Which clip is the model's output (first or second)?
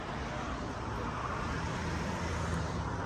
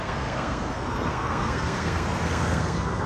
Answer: second